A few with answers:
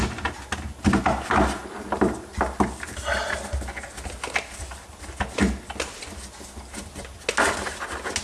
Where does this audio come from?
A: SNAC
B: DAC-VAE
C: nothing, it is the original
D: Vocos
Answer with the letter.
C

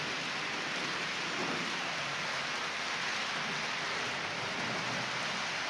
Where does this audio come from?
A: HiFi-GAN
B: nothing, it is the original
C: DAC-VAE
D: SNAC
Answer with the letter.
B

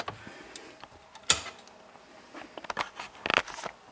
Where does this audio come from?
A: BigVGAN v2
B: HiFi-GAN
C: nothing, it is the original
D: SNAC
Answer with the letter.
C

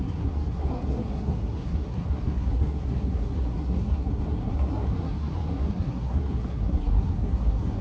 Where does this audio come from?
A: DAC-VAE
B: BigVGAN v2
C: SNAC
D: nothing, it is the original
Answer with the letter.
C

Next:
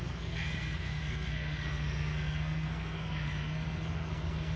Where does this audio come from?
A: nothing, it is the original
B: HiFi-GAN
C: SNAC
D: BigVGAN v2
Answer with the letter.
C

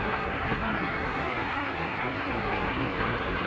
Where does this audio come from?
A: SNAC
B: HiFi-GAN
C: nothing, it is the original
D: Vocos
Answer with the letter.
A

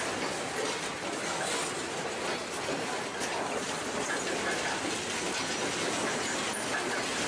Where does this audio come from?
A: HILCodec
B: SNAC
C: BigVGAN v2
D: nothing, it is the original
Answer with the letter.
D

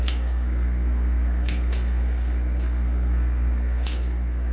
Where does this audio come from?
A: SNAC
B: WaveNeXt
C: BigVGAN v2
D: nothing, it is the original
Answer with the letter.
A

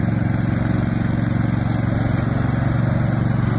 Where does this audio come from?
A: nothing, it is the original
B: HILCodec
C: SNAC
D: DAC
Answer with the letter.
A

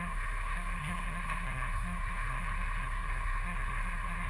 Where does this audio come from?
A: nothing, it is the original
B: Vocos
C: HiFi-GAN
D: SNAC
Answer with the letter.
D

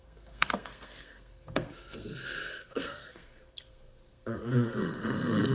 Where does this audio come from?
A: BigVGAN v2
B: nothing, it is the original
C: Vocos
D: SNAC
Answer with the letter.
D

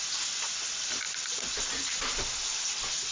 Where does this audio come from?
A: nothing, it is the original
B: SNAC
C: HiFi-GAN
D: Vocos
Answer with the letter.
A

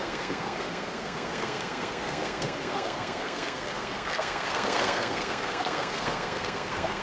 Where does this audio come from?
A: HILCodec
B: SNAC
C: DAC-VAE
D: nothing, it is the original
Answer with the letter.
B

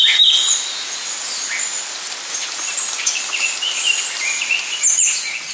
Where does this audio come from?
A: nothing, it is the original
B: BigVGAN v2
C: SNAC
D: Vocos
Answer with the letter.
A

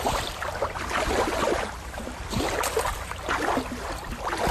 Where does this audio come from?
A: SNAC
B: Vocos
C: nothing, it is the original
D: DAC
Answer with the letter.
C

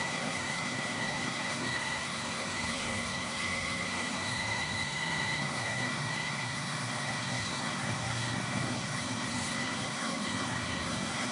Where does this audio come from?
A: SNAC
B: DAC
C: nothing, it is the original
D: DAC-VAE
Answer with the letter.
A